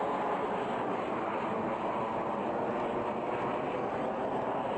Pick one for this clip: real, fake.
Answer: real